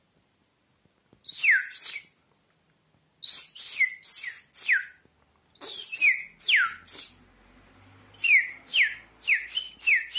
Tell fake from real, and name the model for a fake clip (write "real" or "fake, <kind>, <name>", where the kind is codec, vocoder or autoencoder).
real